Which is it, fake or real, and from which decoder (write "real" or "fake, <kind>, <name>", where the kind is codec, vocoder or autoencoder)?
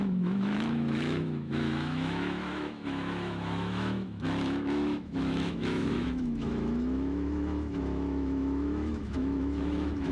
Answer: fake, autoencoder, DAC-VAE